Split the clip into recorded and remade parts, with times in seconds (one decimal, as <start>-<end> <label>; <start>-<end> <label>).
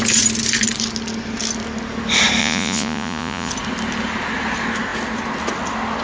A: 0.0-2.4 recorded; 2.4-3.5 remade; 3.5-6.0 recorded